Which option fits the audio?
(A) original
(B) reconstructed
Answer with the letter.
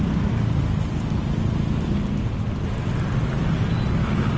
A